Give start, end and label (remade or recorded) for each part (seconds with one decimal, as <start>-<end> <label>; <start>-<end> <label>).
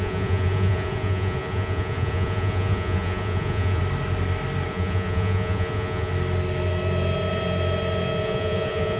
0.0-3.8 remade; 3.8-4.7 recorded; 4.7-6.1 remade; 6.1-8.2 recorded; 8.2-9.0 remade